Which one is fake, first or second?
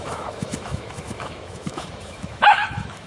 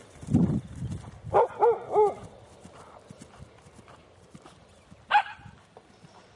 first